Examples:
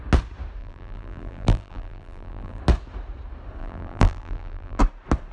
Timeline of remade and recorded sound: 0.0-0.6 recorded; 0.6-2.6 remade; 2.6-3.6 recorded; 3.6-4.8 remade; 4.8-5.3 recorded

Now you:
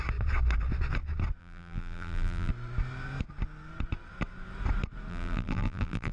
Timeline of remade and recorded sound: 0.0-1.4 recorded; 1.4-2.5 remade; 2.5-5.1 recorded; 5.1-6.1 remade

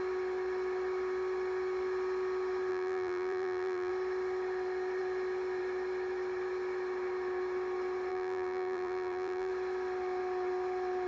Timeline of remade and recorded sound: 0.0-2.7 recorded; 2.7-3.9 remade; 3.9-8.1 recorded; 8.1-9.5 remade; 9.5-11.1 recorded

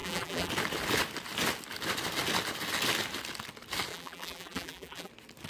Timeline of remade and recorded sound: 0.0-0.5 remade; 0.5-3.9 recorded; 3.9-5.1 remade; 5.1-5.5 recorded

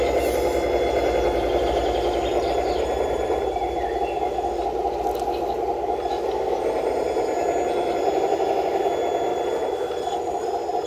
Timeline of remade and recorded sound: 0.0-2.3 recorded; 2.3-3.9 remade; 3.9-9.3 recorded; 9.3-10.9 remade

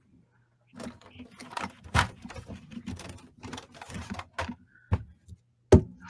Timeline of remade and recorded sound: 0.0-1.4 recorded; 1.4-3.1 remade; 3.1-3.5 recorded; 3.5-4.3 remade; 4.3-6.1 recorded